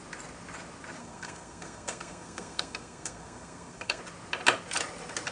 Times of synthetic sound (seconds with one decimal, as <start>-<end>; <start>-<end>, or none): 1.0-4.0